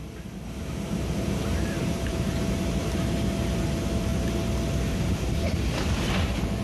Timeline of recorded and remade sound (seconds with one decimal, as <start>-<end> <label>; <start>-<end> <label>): 0.0-3.2 remade; 3.2-6.6 recorded